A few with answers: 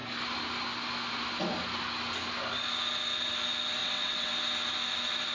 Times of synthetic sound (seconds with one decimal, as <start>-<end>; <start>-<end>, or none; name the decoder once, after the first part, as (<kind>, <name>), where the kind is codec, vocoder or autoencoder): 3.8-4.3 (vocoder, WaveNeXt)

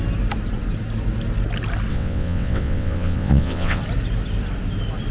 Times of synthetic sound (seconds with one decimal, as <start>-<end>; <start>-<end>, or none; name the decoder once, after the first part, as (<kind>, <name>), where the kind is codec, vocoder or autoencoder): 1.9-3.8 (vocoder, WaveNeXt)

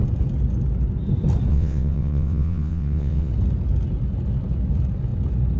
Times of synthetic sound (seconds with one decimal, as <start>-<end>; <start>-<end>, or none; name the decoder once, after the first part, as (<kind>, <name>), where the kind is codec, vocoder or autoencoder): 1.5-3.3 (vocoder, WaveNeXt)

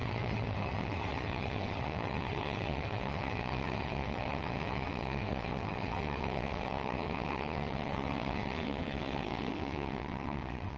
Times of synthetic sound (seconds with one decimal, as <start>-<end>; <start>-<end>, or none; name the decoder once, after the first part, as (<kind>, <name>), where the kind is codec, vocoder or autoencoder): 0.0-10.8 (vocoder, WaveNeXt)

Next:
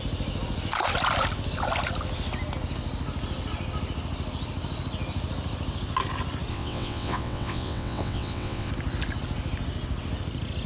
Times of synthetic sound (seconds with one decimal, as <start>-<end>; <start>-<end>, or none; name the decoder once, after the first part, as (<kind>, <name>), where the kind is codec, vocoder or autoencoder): 6.5-8.7 (vocoder, WaveNeXt)